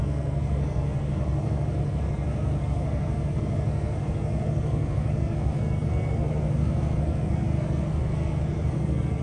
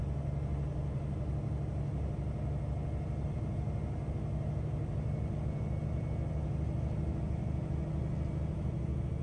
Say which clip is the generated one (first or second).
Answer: first